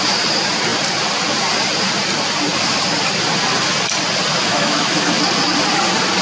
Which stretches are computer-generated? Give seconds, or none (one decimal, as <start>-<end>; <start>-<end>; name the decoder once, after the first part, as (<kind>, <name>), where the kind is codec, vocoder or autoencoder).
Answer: 4.5-5.1 (autoencoder, DAC-VAE)